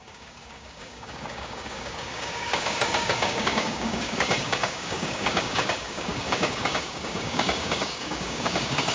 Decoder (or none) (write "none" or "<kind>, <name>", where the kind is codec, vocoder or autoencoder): codec, DAC